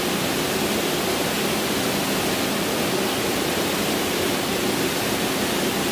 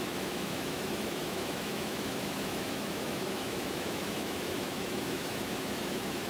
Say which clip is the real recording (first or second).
first